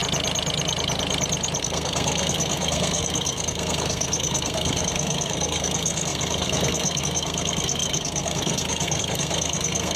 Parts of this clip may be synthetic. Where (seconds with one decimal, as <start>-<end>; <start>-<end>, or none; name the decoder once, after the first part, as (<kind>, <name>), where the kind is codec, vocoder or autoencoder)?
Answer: 1.6-10.0 (codec, SNAC)